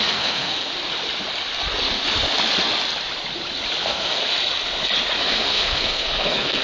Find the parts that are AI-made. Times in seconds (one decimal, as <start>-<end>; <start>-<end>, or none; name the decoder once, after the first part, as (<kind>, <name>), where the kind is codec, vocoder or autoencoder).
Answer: 0.0-0.7 (codec, SNAC); 3.8-4.3; 5.2-6.6